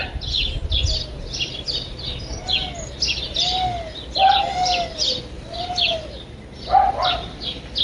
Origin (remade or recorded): recorded